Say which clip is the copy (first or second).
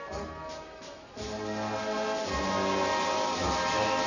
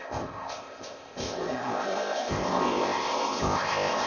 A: second